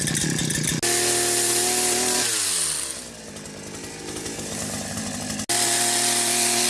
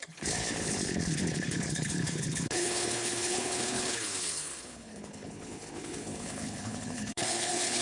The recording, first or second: first